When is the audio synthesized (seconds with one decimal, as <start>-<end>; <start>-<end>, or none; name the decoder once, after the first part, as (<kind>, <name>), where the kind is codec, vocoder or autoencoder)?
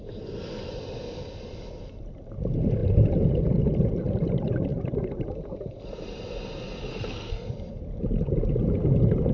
6.9-7.5 (codec, SNAC)